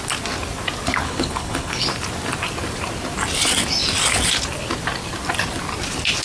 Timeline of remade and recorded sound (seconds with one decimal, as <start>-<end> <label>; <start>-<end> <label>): 0.0-1.0 recorded; 1.0-1.9 remade; 1.9-6.2 recorded